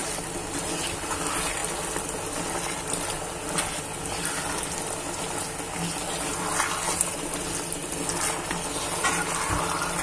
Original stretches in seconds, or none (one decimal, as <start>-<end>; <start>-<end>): 0.0-10.0